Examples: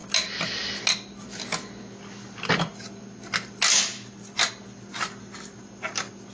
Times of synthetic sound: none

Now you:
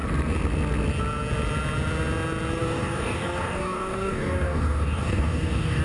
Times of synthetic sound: 2.6-5.8 (codec, DAC)

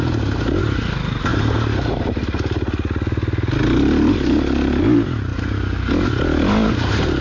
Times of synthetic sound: none

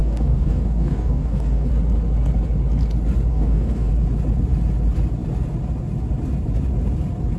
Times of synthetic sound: 0.0-1.7 (codec, DAC); 3.3-3.9

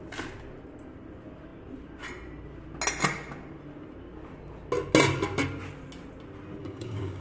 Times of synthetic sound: 6.6-7.2 (codec, DAC)

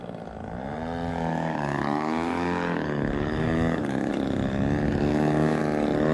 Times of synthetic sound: 1.1-4.1 (codec, DAC); 5.1-5.6